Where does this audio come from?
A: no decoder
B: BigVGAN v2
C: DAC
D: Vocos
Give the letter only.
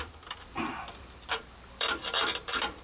B